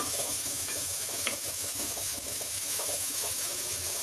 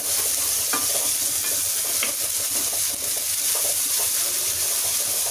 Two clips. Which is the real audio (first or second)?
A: second